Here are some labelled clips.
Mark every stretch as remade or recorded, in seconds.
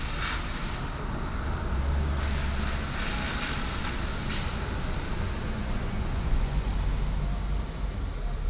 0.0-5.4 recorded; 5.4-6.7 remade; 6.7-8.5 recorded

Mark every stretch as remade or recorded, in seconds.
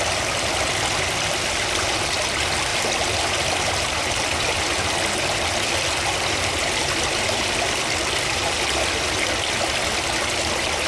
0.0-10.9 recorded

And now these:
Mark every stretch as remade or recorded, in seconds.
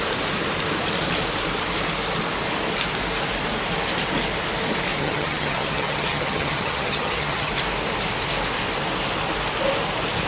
0.0-5.0 recorded; 5.0-7.5 remade; 7.5-10.3 recorded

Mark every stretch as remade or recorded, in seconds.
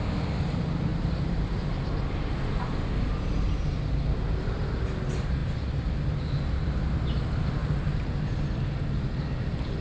0.0-0.9 recorded; 0.9-2.5 remade; 2.5-9.8 recorded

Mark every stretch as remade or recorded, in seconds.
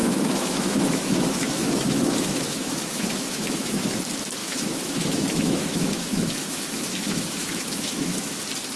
0.0-4.0 remade; 4.0-4.4 recorded; 4.4-8.4 remade; 8.4-8.8 recorded